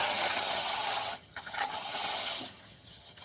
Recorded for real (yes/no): no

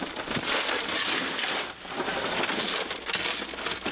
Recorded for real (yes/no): yes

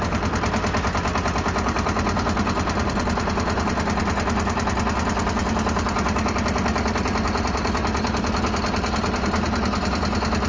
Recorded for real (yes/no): yes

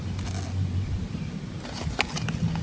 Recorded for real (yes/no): yes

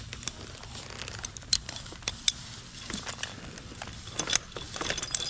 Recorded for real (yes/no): yes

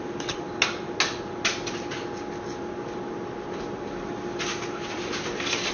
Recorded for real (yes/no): yes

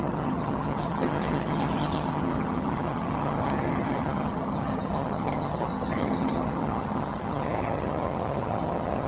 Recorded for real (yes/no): no